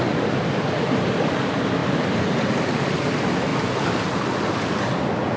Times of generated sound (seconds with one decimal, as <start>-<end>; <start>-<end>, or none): none